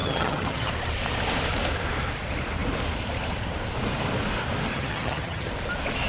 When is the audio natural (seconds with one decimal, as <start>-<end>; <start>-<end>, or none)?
0.7-4.7; 5.5-6.1